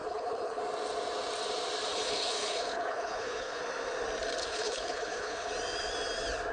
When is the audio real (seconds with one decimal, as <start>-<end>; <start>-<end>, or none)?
0.6-1.9; 3.6-4.4; 5.5-6.5